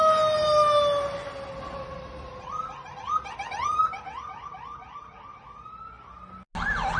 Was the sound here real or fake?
real